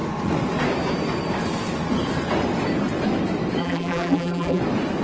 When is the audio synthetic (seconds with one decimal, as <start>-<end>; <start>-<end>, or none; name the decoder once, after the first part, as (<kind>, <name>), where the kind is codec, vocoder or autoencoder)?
3.6-4.6 (vocoder, BigVGAN v2)